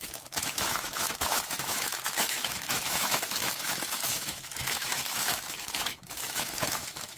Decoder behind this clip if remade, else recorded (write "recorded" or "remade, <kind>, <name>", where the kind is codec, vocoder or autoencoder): remade, autoencoder, DAC-VAE